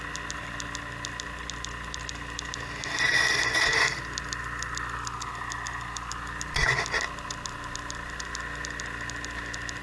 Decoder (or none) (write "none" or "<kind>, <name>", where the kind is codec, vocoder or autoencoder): none